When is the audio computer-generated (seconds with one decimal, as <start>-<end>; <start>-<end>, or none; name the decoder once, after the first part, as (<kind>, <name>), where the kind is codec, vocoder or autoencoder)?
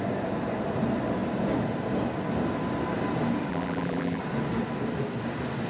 3.5-4.2 (vocoder, BigVGAN v2)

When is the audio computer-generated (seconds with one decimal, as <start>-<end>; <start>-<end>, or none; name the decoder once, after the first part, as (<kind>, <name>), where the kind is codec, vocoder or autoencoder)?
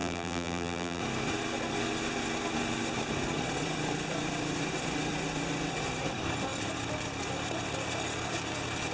0.0-1.0 (vocoder, BigVGAN v2)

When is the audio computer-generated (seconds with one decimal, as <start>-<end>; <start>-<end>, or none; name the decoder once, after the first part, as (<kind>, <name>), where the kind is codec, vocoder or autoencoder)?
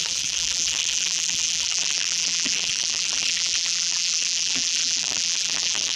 0.0-6.0 (vocoder, BigVGAN v2)